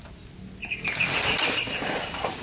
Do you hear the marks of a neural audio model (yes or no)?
no